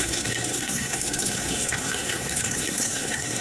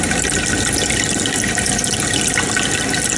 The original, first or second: second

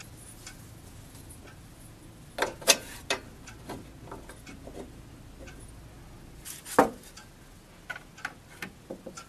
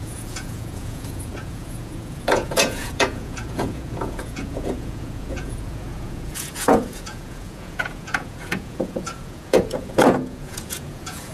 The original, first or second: first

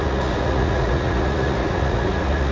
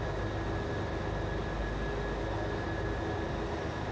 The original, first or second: second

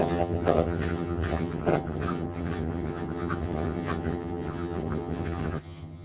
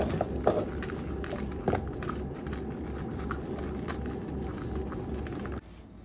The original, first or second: second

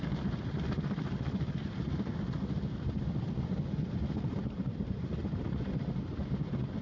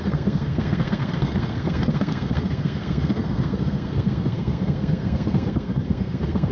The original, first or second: first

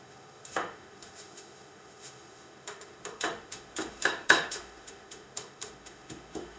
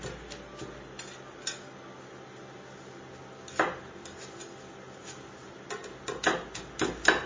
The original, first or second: second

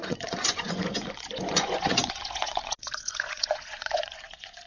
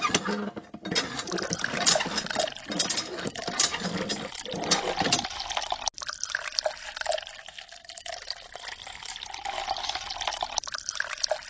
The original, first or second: second